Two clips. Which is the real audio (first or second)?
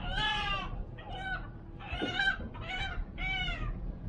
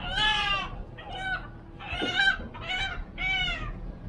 second